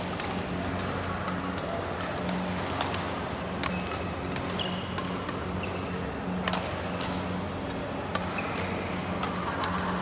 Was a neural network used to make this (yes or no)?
no